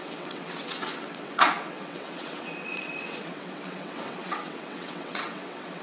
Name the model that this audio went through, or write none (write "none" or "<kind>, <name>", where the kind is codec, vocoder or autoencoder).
vocoder, WaveNeXt